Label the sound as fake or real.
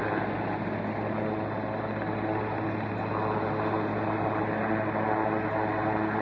real